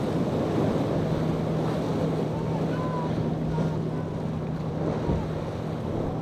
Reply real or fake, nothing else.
real